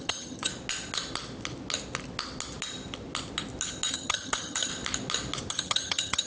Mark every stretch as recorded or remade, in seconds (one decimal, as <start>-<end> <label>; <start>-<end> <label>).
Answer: 0.0-0.5 remade; 0.5-3.9 recorded; 3.9-4.7 remade; 4.7-5.5 recorded; 5.5-6.3 remade